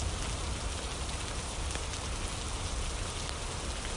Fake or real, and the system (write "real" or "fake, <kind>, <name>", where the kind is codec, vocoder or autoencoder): real